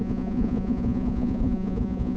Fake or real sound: fake